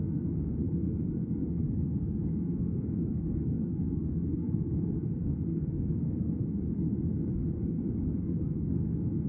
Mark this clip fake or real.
fake